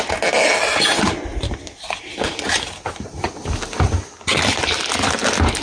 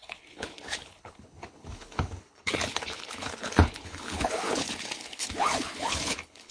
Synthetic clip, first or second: second